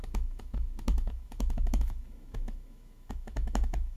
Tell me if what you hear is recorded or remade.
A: remade